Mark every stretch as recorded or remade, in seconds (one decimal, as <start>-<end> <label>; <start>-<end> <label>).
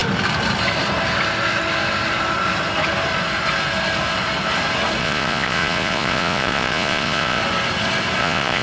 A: 0.0-5.0 recorded; 5.0-7.4 remade; 7.4-8.2 recorded; 8.2-8.6 remade